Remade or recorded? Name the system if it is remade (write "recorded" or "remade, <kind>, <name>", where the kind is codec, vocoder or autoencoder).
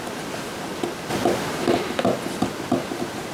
recorded